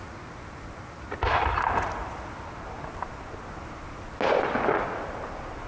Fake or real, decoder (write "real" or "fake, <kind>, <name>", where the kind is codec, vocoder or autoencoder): real